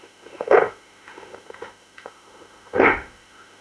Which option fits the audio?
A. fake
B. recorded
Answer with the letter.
A